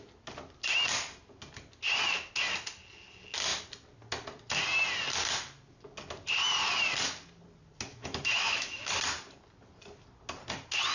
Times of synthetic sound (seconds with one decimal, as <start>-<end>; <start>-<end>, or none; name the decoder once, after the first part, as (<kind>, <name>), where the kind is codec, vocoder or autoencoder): 7.9-8.9 (autoencoder, DAC-VAE)